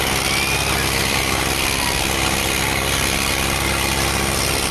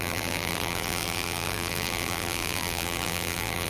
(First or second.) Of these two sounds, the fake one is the second